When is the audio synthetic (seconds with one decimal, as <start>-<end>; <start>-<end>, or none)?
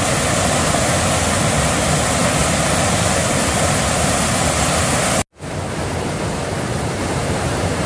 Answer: 6.7-7.9